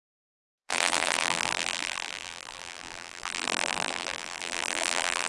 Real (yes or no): no